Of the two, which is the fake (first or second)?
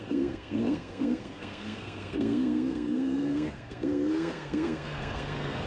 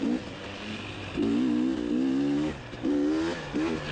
first